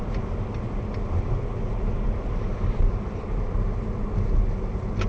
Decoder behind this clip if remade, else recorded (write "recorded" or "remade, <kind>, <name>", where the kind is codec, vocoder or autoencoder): recorded